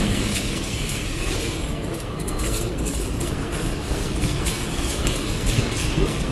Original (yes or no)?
no